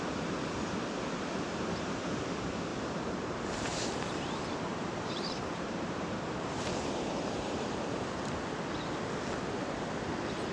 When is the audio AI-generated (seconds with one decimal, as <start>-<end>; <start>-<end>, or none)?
2.7-7.6